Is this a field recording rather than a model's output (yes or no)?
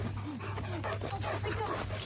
yes